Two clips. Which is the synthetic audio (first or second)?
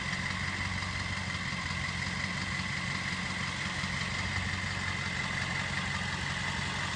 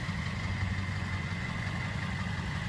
second